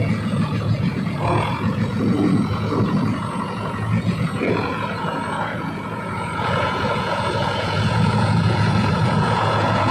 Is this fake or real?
fake